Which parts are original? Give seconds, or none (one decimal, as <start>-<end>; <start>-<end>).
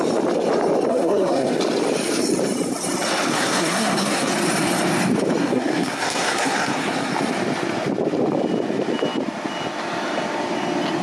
0.0-0.9; 1.6-3.3; 4.3-5.4; 7.1-11.0